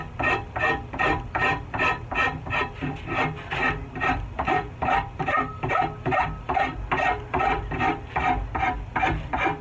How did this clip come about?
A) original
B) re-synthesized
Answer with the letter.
A